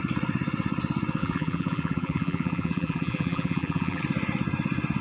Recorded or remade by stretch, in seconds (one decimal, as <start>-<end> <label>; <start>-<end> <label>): 0.0-1.2 recorded; 1.2-4.0 remade; 4.0-5.0 recorded